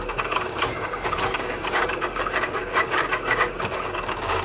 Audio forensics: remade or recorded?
remade